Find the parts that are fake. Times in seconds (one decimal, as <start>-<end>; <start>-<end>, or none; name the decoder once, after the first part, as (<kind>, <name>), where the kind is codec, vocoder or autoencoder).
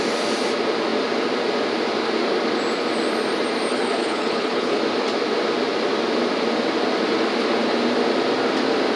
3.7-4.8 (codec, HILCodec)